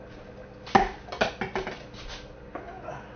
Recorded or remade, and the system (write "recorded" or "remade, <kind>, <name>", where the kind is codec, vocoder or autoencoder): recorded